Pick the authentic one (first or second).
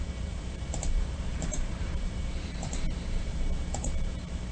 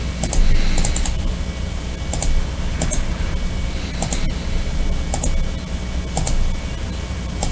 second